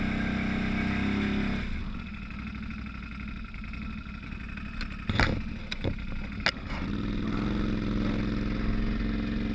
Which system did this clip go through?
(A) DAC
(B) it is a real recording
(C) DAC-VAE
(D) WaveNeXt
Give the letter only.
B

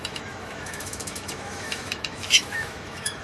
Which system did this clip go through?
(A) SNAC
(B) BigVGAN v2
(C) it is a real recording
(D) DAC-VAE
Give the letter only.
D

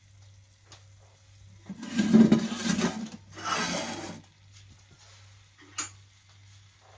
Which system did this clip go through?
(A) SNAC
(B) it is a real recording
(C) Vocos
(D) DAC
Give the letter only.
B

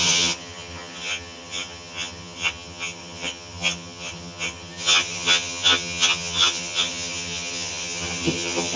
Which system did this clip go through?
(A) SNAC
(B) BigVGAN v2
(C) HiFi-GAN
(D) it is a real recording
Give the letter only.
C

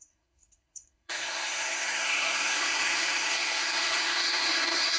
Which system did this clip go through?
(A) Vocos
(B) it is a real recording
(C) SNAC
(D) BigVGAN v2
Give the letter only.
C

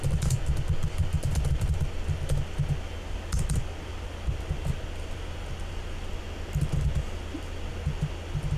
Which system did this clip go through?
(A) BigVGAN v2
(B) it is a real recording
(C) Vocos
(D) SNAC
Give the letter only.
B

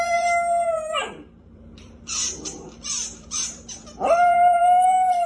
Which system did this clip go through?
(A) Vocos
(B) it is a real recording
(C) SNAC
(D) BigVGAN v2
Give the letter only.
D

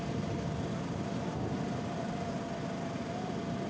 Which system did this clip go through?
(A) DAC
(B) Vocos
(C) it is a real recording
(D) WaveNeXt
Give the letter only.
C